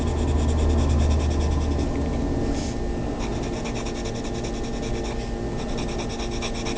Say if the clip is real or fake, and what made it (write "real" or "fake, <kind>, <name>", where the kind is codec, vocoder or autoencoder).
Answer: real